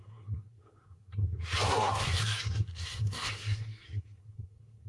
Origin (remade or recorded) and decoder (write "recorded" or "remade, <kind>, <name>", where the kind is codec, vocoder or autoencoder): remade, codec, SNAC